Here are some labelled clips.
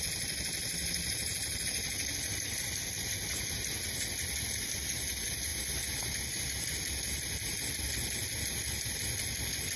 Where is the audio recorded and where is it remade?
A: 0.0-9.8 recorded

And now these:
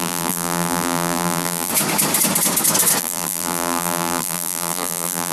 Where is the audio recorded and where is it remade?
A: 0.0-1.7 remade; 1.7-3.0 recorded; 3.0-5.3 remade

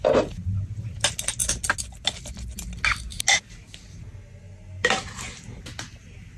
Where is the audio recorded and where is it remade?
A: 0.0-6.4 recorded

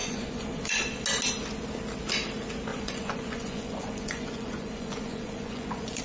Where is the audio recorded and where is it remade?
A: 0.0-0.8 remade; 0.8-2.7 recorded; 2.7-6.0 remade

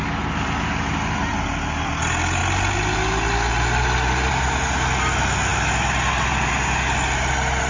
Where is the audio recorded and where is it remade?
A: 0.0-7.7 recorded

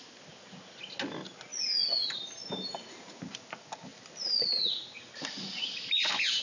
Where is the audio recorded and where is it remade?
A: 0.0-6.4 recorded